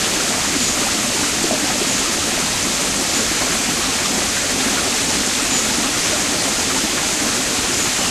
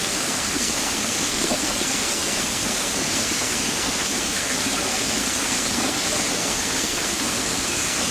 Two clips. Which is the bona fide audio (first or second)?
first